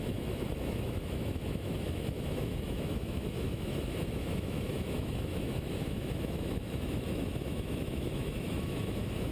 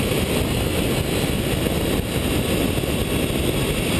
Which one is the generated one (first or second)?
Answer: first